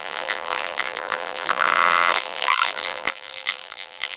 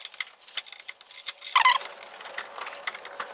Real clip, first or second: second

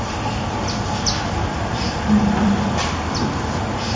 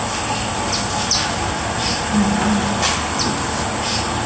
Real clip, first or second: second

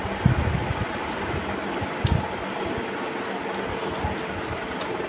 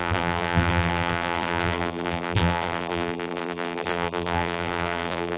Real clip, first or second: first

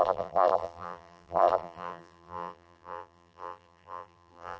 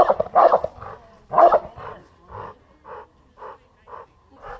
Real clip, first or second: second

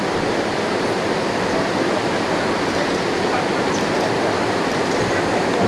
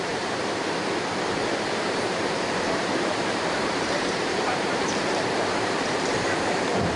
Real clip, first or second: first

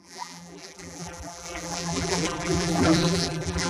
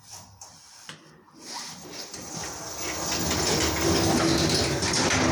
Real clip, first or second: second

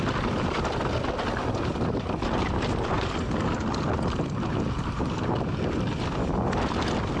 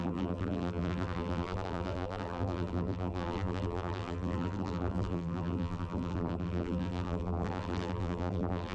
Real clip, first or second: first